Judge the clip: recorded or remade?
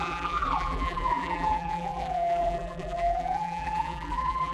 remade